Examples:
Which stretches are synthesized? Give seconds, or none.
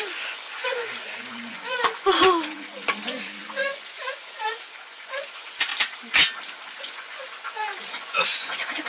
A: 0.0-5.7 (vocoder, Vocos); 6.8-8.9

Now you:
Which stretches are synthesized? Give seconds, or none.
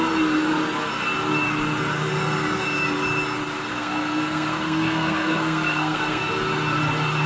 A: 3.7-6.3 (codec, SNAC)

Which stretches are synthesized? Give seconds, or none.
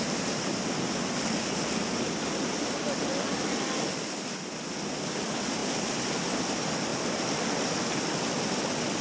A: none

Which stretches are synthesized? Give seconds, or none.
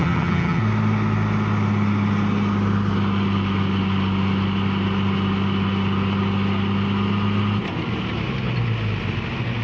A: 0.0-0.6 (vocoder, HiFi-GAN)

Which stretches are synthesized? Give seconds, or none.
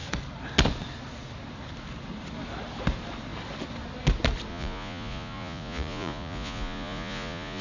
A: 4.5-7.6 (vocoder, Vocos)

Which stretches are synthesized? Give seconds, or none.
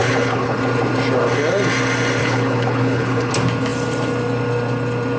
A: 0.0-0.6 (codec, HILCodec); 2.2-3.3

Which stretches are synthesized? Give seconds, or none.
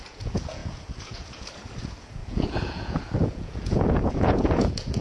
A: 0.0-5.0 (vocoder, Vocos)